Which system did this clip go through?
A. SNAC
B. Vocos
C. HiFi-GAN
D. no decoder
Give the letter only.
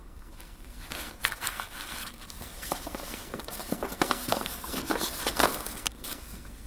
A